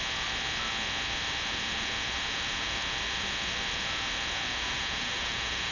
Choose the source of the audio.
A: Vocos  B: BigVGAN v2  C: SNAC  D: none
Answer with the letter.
D